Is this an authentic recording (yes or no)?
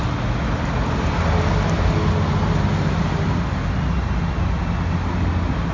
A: yes